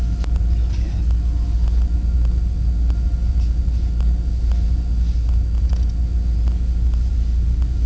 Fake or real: real